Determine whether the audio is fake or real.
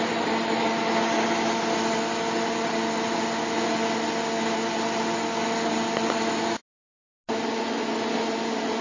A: real